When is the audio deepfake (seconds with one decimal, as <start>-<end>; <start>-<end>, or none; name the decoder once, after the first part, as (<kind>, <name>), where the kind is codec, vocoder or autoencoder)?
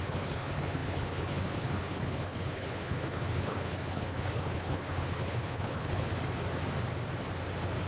0.0-6.1 (codec, HILCodec)